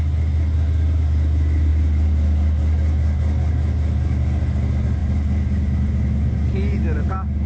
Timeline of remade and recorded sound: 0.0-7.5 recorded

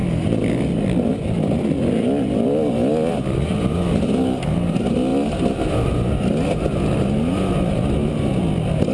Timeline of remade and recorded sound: 0.0-8.9 recorded

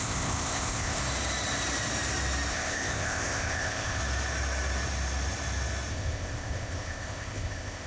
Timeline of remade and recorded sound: 0.0-1.0 remade; 1.0-2.5 recorded; 2.5-4.0 remade; 4.0-5.9 recorded; 5.9-7.9 remade

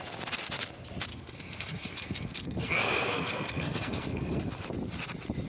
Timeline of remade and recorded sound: 0.0-1.1 recorded; 1.1-4.4 remade; 4.4-5.5 recorded

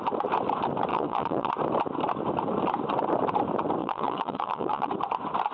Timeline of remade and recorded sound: 0.0-0.9 recorded; 0.9-1.5 remade; 1.5-3.8 recorded; 3.8-4.9 remade; 4.9-5.5 recorded

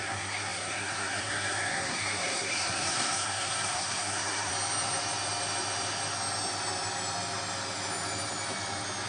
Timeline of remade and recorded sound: 0.0-4.5 remade; 4.5-9.1 recorded